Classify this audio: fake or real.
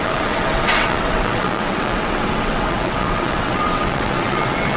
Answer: fake